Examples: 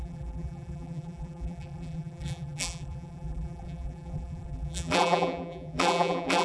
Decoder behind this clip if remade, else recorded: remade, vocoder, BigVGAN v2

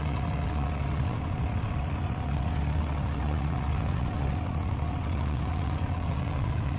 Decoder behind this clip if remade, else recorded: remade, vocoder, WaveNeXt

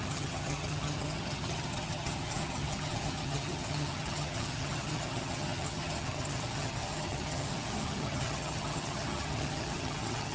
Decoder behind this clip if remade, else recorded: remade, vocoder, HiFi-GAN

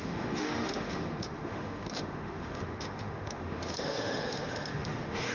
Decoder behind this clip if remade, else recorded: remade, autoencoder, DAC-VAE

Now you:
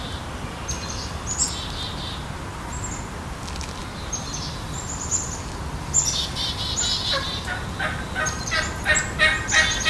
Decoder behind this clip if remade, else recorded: recorded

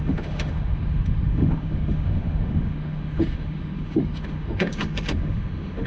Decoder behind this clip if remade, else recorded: remade, autoencoder, DAC-VAE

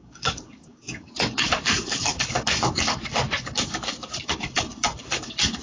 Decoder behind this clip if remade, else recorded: remade, codec, DAC